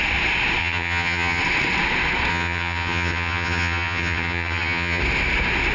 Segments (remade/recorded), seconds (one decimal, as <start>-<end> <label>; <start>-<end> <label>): 0.0-0.6 recorded; 0.6-1.4 remade; 1.4-2.3 recorded; 2.3-5.0 remade; 5.0-5.7 recorded